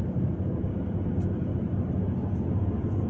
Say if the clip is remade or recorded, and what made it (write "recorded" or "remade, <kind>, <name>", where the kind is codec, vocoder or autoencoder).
recorded